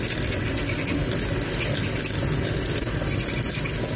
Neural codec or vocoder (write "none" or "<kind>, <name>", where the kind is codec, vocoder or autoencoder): none